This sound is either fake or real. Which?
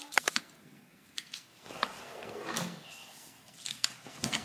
fake